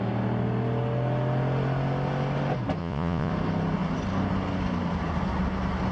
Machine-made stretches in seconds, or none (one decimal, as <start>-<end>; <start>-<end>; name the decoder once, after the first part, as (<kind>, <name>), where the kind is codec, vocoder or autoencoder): 2.8-3.3 (vocoder, Vocos)